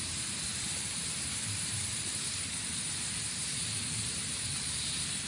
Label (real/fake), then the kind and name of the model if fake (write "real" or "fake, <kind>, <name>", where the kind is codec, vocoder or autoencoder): fake, vocoder, BigVGAN v2